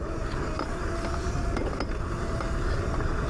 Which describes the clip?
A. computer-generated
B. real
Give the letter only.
B